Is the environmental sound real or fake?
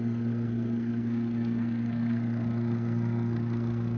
fake